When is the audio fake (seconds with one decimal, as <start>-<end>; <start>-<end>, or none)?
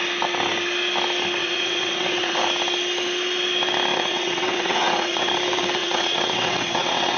1.4-2.4; 3.9-5.3; 5.8-7.2